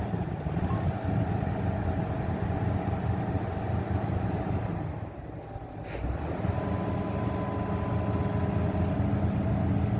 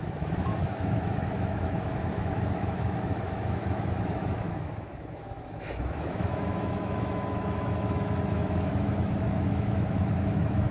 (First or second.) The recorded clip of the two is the first